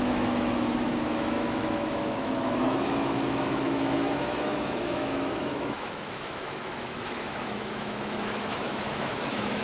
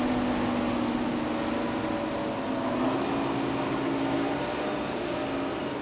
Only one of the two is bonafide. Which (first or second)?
second